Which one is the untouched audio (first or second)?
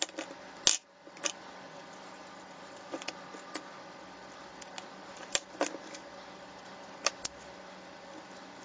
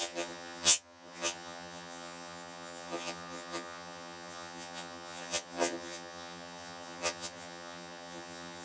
first